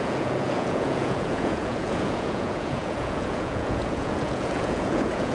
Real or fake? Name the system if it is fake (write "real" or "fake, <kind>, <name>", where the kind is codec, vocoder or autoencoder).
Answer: fake, vocoder, Vocos